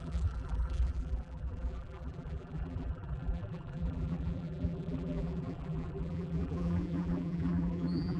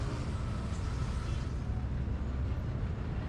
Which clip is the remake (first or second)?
first